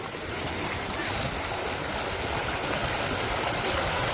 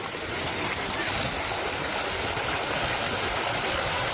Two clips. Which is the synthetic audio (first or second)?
second